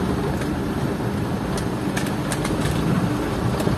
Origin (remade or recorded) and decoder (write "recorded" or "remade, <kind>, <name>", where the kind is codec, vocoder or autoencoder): recorded